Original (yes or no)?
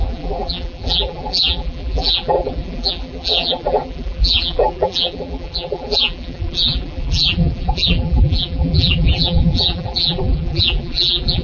no